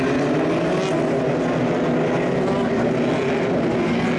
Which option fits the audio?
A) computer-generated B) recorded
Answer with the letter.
B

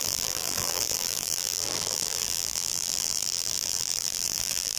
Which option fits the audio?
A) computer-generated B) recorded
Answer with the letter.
A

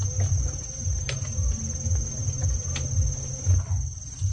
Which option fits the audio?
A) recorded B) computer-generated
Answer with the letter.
A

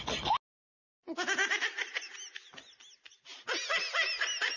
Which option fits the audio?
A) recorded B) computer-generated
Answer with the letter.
A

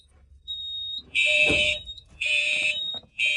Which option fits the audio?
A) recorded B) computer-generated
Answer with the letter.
B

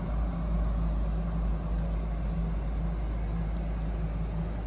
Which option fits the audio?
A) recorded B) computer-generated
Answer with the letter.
A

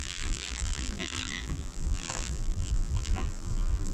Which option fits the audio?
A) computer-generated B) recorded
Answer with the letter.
A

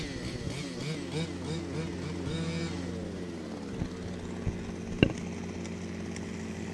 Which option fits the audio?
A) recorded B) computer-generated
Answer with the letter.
A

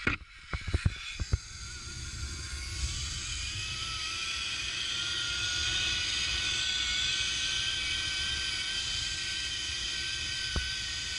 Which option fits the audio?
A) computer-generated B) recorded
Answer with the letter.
B